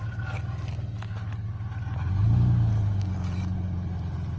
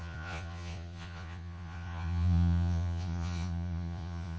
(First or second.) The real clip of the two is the first